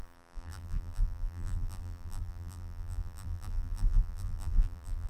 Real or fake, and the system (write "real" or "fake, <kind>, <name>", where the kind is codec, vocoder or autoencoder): fake, vocoder, BigVGAN v2